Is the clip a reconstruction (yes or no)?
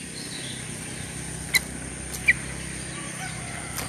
no